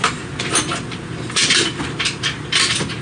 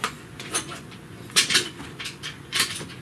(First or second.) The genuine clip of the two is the first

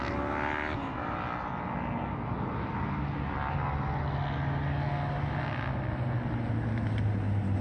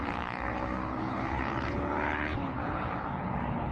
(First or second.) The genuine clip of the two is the first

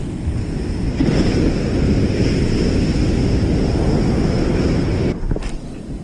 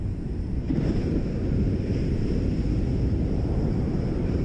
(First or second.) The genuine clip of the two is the first